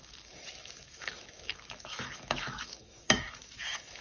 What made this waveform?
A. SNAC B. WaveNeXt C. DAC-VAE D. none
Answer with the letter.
C